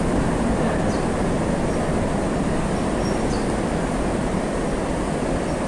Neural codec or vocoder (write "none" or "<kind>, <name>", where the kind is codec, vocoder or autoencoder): none